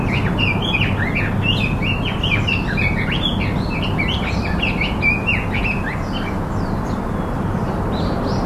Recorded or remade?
recorded